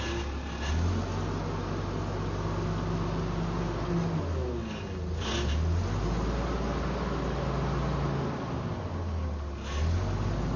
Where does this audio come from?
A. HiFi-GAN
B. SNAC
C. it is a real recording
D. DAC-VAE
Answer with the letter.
C